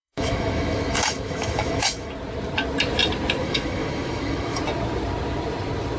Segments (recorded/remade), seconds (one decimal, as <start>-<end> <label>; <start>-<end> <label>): 0.0-2.1 remade; 2.1-3.4 recorded; 3.4-4.6 remade; 4.6-6.0 recorded